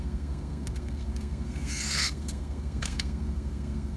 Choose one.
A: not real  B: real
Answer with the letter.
A